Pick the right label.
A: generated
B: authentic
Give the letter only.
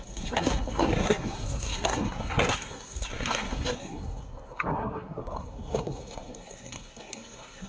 A